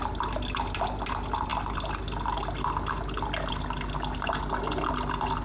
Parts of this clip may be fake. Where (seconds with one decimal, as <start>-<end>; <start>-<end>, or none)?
none